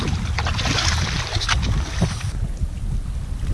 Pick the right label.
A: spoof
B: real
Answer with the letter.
B